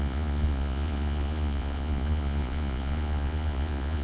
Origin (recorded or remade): remade